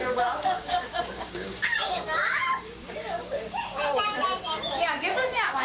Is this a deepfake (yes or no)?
yes